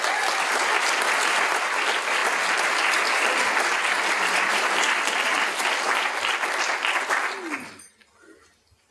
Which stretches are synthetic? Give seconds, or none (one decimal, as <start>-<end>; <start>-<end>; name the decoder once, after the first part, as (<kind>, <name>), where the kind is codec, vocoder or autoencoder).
none